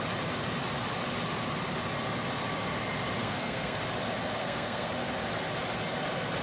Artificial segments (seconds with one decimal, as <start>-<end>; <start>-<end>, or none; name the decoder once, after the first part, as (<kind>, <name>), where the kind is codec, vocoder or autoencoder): 3.2-3.8 (codec, SNAC); 4.4-4.9